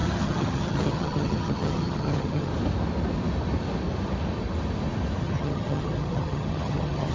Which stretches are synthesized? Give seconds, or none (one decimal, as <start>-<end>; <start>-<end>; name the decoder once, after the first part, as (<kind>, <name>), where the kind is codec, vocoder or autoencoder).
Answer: 0.0-2.5 (vocoder, HiFi-GAN); 5.2-7.1